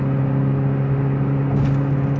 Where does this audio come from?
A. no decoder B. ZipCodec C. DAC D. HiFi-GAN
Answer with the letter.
A